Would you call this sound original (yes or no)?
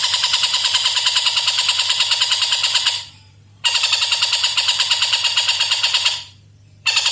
no